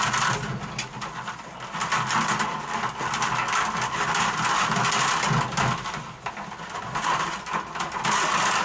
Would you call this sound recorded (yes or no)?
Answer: yes